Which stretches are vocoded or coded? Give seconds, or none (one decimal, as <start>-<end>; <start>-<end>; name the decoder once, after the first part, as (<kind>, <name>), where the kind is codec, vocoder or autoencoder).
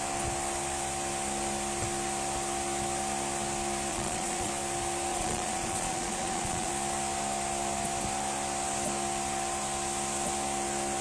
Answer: 3.9-4.5 (vocoder, Vocos); 5.1-6.7